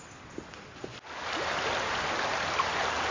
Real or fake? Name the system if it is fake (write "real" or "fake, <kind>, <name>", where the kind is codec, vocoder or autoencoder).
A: real